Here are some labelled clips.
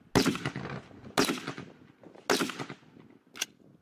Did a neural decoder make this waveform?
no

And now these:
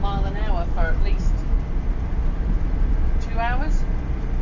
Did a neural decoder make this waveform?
no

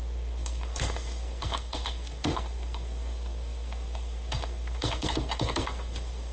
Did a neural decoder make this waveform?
yes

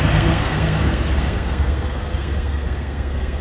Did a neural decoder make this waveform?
yes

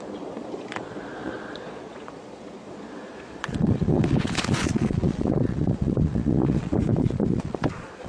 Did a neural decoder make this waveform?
yes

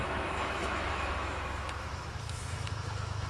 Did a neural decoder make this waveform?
yes